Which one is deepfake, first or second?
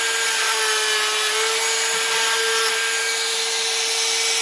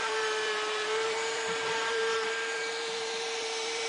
second